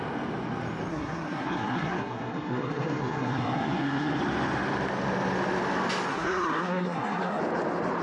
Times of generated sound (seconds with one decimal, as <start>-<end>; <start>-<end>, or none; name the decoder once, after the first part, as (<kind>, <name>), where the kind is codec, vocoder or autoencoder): 0.9-4.2 (codec, SNAC); 6.1-7.4